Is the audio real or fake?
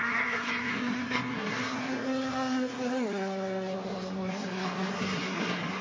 fake